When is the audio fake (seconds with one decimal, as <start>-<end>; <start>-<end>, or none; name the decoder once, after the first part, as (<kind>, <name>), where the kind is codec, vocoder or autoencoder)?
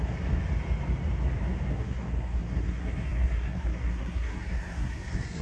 0.0-0.4 (codec, SNAC); 1.7-5.4